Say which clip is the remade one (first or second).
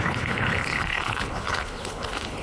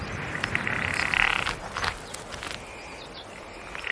first